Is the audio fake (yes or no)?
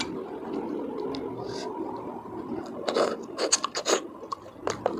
no